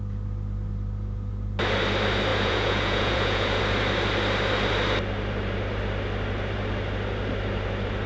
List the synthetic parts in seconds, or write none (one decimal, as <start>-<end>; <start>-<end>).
2.3-3.6